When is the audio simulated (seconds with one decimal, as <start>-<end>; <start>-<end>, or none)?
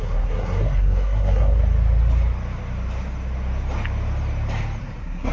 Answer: 0.0-1.6; 4.8-5.3